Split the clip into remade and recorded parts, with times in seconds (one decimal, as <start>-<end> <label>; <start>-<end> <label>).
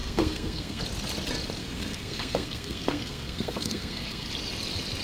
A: 0.0-0.8 remade; 0.8-1.6 recorded; 1.6-4.3 remade; 4.3-5.0 recorded